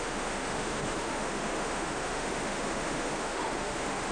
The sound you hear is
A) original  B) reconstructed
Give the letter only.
B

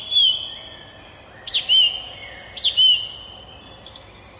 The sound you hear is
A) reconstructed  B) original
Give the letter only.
B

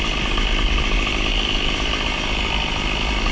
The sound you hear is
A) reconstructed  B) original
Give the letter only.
B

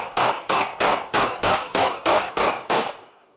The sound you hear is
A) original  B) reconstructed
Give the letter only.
B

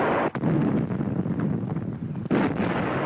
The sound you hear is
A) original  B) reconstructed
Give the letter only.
A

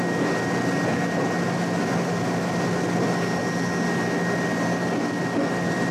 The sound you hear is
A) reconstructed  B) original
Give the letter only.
B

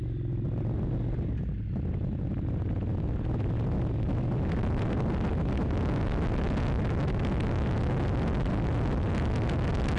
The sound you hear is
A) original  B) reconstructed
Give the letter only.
A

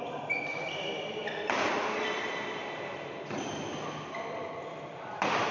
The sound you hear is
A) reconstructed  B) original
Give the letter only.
B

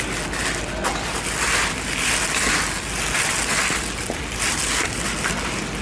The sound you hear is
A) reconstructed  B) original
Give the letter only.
B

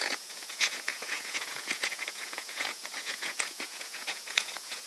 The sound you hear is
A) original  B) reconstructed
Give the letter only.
B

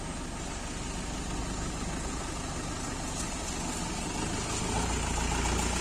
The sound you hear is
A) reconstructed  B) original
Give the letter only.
B